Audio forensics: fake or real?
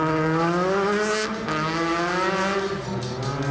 real